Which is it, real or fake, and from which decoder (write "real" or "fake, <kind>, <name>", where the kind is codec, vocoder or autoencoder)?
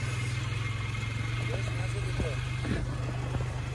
real